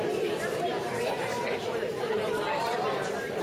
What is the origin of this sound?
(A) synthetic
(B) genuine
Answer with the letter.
A